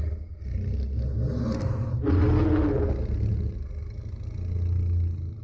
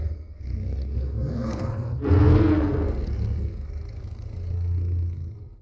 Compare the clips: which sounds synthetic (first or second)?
second